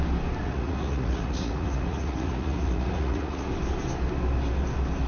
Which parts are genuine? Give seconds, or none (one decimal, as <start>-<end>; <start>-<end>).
0.0-0.4; 3.5-5.1